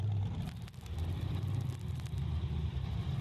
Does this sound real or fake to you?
real